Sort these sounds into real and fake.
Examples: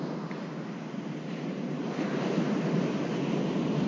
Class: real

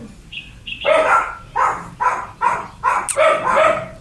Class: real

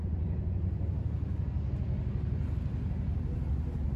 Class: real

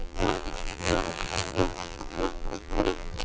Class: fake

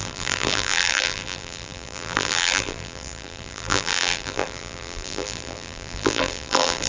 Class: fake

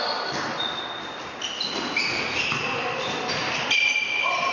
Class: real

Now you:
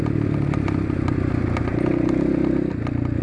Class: real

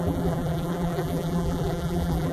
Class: fake